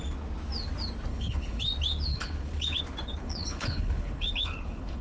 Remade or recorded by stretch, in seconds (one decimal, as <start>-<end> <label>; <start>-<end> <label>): 0.0-1.1 recorded; 1.1-1.6 remade; 1.6-2.1 recorded; 2.1-2.8 remade; 2.8-3.2 recorded; 3.2-5.0 remade

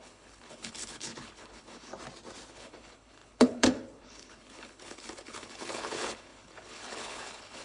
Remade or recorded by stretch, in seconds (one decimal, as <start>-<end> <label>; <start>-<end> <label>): 0.0-1.9 remade; 1.9-2.5 recorded; 2.5-7.6 remade

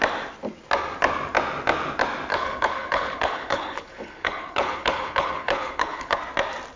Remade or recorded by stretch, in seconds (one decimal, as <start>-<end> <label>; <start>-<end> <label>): 0.0-2.3 recorded; 2.3-6.2 remade; 6.2-6.8 recorded

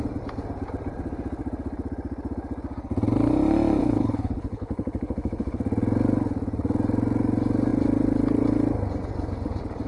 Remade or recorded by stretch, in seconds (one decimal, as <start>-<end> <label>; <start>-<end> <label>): 0.0-3.8 recorded; 3.8-5.6 remade; 5.6-9.9 recorded

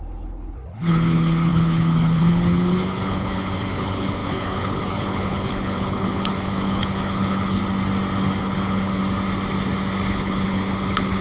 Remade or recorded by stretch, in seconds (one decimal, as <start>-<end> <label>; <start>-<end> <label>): 0.0-7.6 remade; 7.6-8.4 recorded; 8.4-9.0 remade; 9.0-10.1 recorded; 10.1-11.2 remade